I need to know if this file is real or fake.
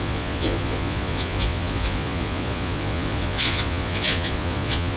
fake